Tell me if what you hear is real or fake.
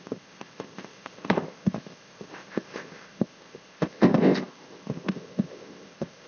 fake